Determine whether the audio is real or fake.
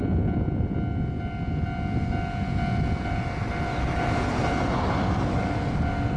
real